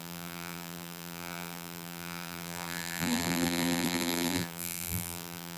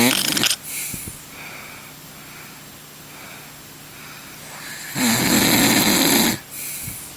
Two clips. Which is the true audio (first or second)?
second